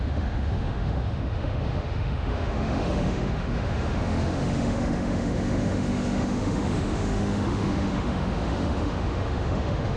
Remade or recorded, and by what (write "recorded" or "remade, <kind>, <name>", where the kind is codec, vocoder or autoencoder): remade, autoencoder, DAC-VAE